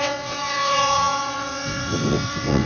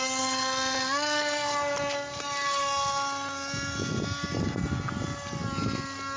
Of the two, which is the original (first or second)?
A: second